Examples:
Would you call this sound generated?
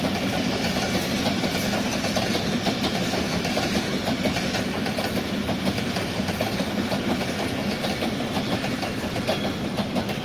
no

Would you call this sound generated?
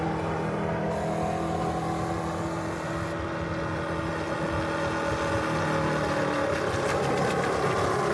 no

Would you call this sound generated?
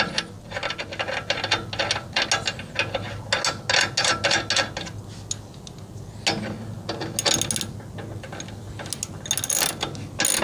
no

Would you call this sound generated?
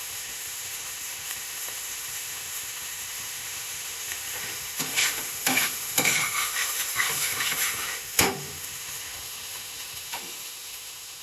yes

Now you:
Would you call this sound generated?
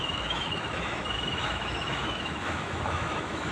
yes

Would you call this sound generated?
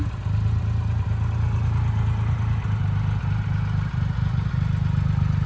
no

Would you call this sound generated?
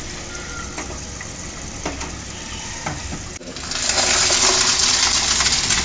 no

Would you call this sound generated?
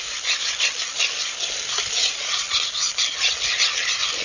no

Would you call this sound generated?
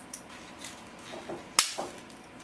no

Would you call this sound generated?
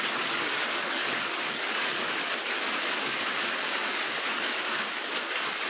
yes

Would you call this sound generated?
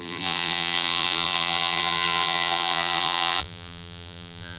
yes